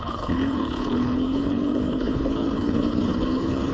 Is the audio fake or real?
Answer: fake